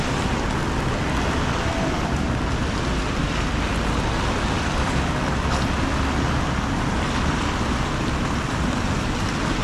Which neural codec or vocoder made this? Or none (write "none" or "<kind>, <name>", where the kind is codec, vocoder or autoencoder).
none